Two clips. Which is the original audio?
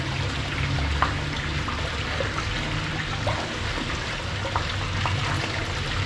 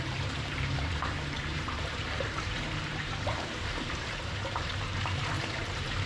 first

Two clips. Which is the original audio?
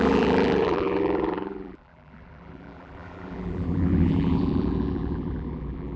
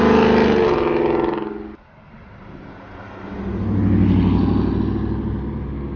second